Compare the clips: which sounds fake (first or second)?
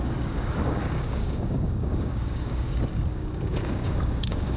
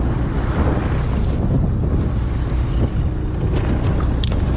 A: first